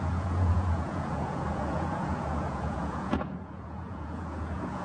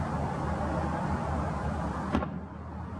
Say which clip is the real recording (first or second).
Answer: second